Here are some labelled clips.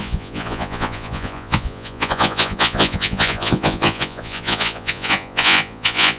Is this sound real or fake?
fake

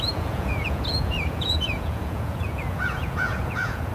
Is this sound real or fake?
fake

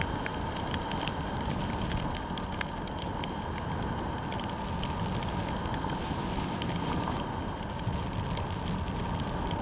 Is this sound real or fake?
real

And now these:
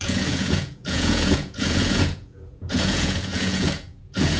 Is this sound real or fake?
fake